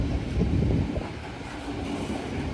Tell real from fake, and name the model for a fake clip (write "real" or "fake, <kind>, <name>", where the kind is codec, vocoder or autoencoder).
real